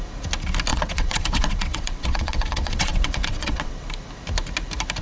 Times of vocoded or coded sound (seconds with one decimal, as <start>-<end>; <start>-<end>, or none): 0.7-3.7